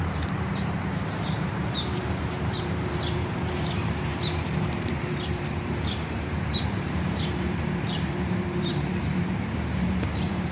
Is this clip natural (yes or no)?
no